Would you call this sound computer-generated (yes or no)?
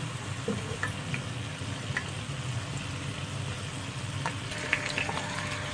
no